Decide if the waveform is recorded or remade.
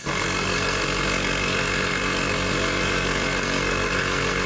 remade